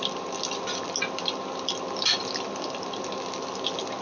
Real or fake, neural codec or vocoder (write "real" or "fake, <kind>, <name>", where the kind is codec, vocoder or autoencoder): real